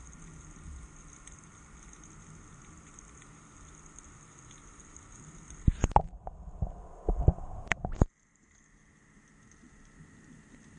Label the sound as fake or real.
real